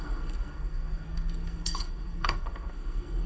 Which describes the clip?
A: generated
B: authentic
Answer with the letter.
A